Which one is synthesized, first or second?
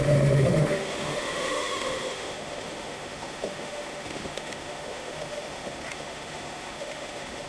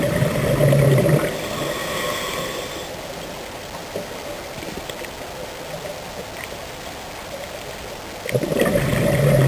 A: first